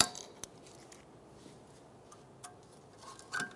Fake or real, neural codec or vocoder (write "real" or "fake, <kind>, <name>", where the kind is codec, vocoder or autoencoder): real